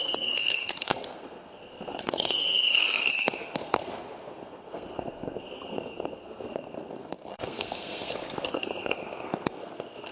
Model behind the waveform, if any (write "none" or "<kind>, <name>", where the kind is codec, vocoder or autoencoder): codec, SNAC